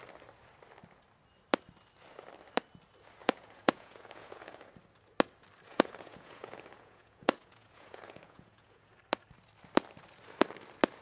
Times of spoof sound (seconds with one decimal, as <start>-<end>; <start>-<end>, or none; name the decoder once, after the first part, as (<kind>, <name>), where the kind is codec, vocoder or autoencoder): 3.2-4.7 (vocoder, Vocos); 5.7-8.9